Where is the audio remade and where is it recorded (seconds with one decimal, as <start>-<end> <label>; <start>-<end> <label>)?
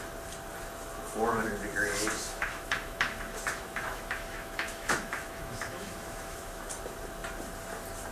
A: 0.0-1.9 recorded; 1.9-6.7 remade; 6.7-8.1 recorded